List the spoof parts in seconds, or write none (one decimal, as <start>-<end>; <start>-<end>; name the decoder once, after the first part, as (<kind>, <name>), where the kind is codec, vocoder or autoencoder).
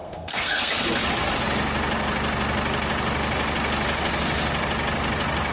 0.0-0.7 (codec, SNAC)